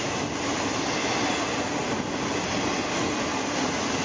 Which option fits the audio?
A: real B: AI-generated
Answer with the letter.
A